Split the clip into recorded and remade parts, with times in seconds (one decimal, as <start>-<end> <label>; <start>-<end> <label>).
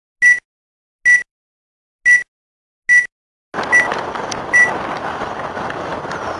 0.0-6.4 recorded